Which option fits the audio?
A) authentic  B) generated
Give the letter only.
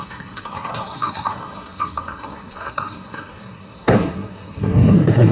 B